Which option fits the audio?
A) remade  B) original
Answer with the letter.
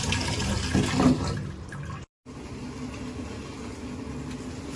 B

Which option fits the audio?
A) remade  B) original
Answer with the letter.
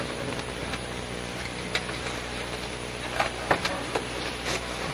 B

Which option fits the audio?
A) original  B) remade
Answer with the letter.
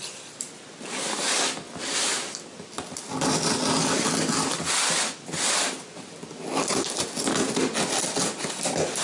A